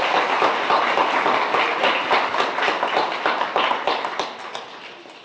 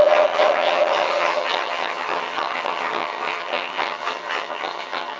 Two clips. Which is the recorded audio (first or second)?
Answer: first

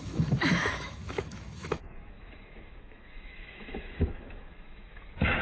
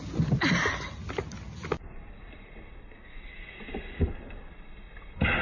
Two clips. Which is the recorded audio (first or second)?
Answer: second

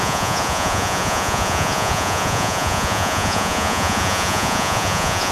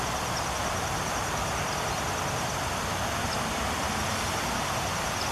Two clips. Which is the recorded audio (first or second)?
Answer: second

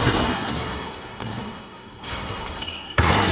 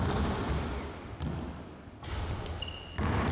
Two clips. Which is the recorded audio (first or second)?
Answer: second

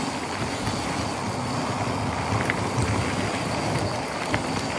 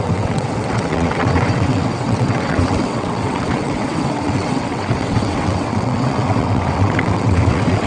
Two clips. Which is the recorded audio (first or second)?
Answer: first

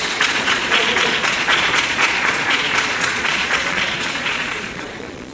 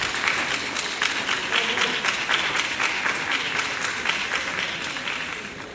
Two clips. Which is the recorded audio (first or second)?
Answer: second